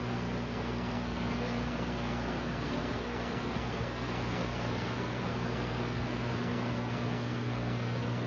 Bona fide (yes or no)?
no